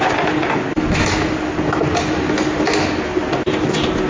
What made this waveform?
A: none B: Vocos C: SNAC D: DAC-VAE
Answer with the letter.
A